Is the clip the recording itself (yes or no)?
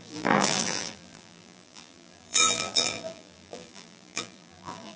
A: no